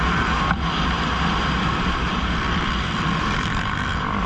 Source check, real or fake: fake